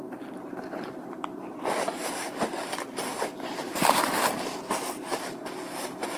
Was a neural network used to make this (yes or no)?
no